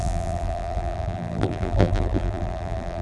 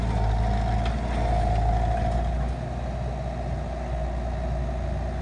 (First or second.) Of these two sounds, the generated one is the first